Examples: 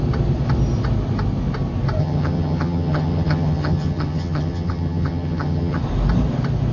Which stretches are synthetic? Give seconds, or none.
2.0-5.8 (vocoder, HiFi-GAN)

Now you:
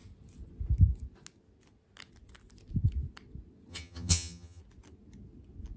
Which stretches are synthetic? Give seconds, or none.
3.7-4.6 (vocoder, HiFi-GAN)

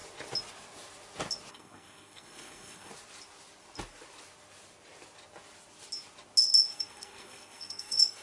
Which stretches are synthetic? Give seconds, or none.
1.5-2.9 (codec, SNAC); 6.7-8.2

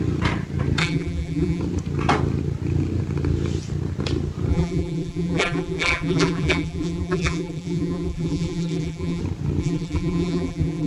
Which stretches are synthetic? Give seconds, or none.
0.8-1.6 (vocoder, BigVGAN v2); 4.5-9.2; 9.6-10.9

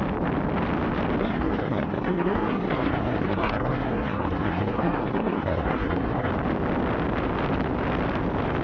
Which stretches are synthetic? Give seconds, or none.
1.2-6.3 (codec, SNAC)